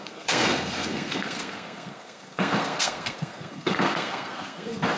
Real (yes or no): no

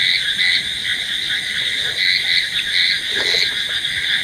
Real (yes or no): yes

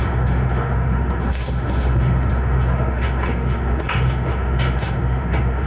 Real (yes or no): no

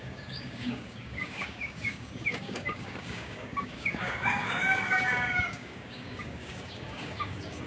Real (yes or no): no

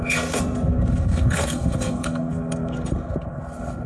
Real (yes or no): no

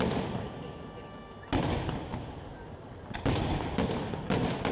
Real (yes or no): yes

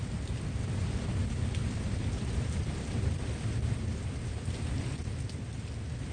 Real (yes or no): yes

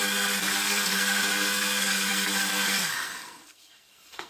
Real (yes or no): no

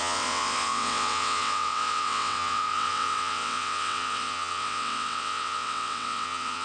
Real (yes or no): no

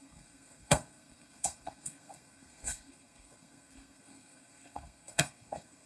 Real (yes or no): no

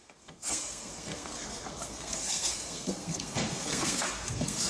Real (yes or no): no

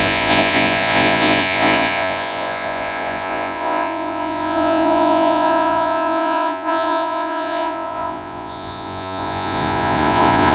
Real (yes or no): no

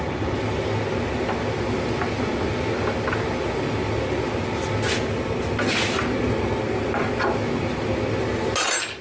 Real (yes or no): yes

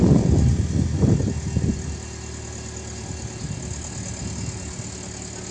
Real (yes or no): yes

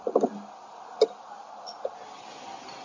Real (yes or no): yes